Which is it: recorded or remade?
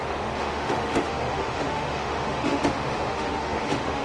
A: remade